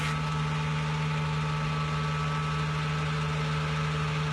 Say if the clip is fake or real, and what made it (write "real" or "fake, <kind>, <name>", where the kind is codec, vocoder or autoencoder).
real